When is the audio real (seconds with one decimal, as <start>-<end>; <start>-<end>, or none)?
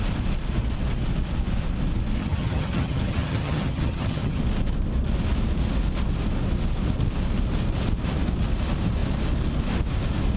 0.0-2.2; 4.4-10.4